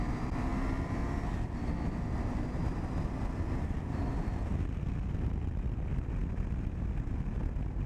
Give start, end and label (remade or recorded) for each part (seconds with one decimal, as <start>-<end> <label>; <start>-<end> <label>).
0.0-7.9 recorded

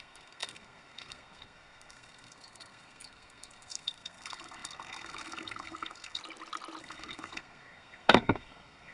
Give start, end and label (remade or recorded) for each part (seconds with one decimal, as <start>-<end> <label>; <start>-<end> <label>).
0.0-6.2 remade; 6.2-6.8 recorded; 6.8-8.9 remade

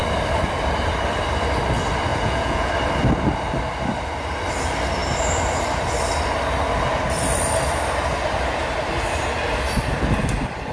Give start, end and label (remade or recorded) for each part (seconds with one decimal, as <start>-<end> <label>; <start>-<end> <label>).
0.0-2.1 recorded; 2.1-2.7 remade; 2.7-10.7 recorded

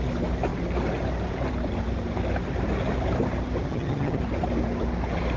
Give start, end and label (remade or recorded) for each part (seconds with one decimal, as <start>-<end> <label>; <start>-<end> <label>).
0.0-3.7 recorded; 3.7-4.2 remade; 4.2-5.4 recorded

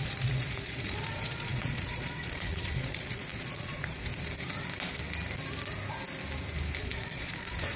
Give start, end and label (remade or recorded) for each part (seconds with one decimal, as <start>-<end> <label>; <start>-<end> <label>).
0.0-4.1 remade; 4.1-6.8 recorded; 6.8-7.8 remade

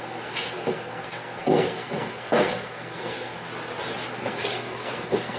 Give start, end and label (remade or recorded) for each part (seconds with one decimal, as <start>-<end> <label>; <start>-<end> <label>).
0.0-3.5 remade; 3.5-4.2 recorded; 4.2-5.4 remade